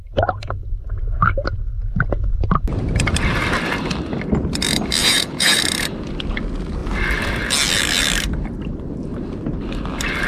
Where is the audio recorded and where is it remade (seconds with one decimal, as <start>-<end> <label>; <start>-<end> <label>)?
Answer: 0.0-5.0 recorded; 5.0-5.6 remade; 5.6-10.3 recorded